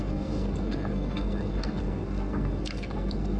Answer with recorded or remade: remade